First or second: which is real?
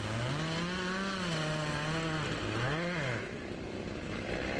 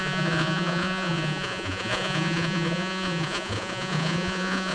first